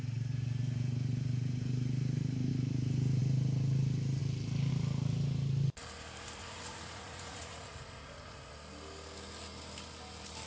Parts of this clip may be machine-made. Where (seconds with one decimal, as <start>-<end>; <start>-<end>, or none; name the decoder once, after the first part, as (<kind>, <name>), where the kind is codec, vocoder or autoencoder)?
6.4-8.5 (vocoder, Vocos)